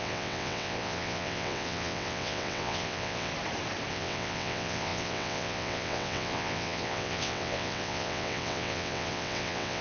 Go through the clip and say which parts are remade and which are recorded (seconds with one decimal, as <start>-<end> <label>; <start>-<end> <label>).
0.0-3.3 remade; 3.3-3.9 recorded; 3.9-9.8 remade